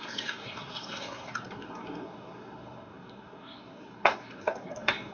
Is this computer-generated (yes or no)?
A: yes